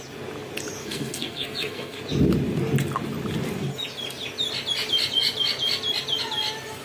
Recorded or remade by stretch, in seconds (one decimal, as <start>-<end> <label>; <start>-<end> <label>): 0.0-0.8 recorded; 0.8-2.0 remade; 2.0-6.8 recorded